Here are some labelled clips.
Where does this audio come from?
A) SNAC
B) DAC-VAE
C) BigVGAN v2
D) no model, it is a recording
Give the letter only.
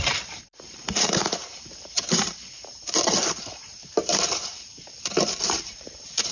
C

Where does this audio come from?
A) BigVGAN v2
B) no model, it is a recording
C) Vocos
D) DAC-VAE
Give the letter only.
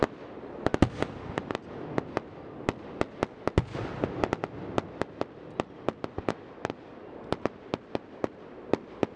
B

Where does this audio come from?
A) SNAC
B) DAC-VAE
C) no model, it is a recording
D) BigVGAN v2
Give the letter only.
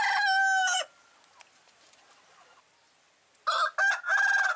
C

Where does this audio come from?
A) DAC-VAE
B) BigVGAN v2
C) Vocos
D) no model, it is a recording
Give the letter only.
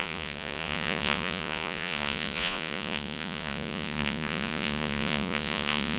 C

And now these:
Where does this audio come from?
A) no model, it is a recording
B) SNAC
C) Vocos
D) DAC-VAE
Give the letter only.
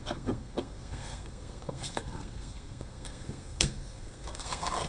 B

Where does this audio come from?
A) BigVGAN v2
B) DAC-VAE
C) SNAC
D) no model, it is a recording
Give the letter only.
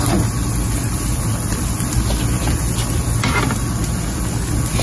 D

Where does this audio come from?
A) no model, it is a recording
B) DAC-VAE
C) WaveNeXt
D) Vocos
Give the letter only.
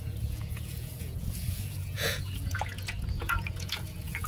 D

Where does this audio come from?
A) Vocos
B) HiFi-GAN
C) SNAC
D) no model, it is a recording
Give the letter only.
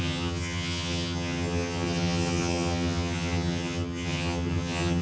B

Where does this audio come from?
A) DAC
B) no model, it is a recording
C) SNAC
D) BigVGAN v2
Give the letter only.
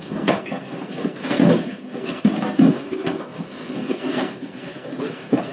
C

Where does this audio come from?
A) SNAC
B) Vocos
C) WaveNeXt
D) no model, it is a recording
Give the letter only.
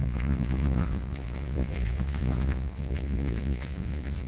B